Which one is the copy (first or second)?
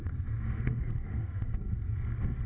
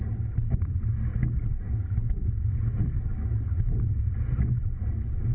first